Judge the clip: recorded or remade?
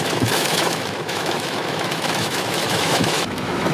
remade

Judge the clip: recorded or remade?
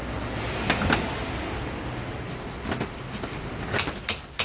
recorded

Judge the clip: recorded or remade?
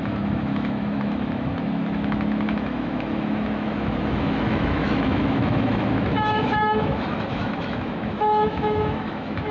remade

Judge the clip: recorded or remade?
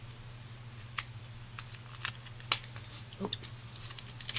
recorded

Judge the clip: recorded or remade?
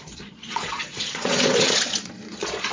remade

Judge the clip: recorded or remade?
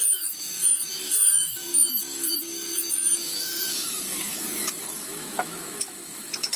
remade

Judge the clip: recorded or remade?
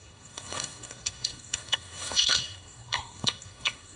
remade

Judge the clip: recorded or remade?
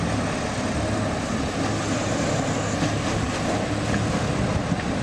recorded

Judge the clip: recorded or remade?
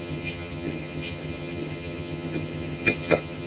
remade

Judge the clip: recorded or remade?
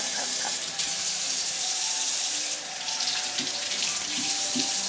remade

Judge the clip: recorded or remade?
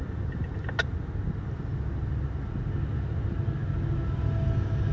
recorded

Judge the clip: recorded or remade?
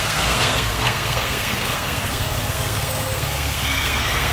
remade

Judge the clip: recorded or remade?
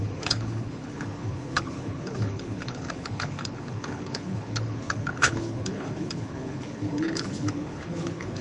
remade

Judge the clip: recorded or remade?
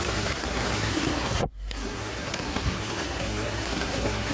remade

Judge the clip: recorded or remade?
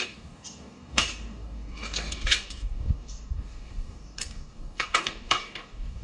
remade